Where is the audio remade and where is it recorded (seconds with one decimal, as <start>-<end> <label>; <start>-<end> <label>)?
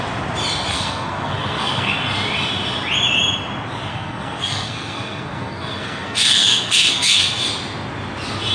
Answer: 0.0-0.7 recorded; 0.7-1.9 remade; 1.9-3.9 recorded; 3.9-7.5 remade; 7.5-8.5 recorded